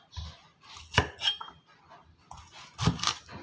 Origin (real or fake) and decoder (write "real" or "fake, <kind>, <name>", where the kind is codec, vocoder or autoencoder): real